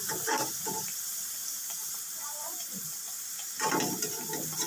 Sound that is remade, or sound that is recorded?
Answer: remade